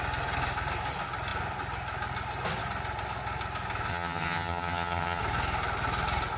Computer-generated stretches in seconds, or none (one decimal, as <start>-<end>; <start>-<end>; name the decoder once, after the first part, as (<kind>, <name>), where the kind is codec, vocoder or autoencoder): 3.9-5.2 (vocoder, HiFi-GAN)